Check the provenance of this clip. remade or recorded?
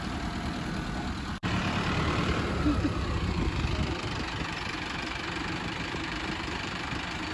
remade